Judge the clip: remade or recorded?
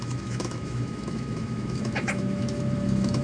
remade